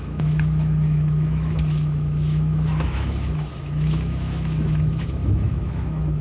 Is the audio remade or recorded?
remade